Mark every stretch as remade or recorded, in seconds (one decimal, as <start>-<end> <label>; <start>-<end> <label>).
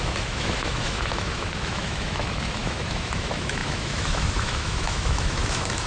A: 0.0-5.9 remade